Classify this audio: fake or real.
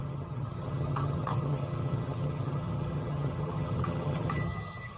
fake